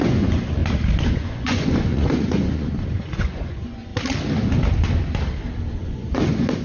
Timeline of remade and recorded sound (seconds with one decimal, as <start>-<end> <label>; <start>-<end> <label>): 0.0-0.6 remade; 0.6-1.1 recorded; 1.1-3.9 remade; 3.9-5.7 recorded; 5.7-6.6 remade